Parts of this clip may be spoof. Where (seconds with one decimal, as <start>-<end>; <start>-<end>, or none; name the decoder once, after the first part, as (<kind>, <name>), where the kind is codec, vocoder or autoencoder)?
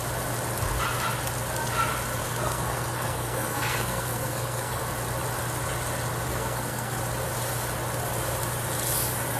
2.2-4.8 (codec, SNAC); 6.3-7.0